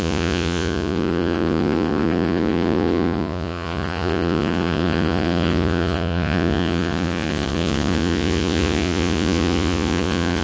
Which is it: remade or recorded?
remade